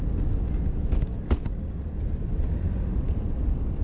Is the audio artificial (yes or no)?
no